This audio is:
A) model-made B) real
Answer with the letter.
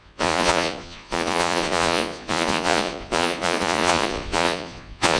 A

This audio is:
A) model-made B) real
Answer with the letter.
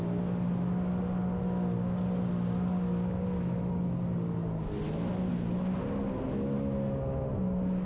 B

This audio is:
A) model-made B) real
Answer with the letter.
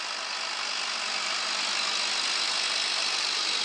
B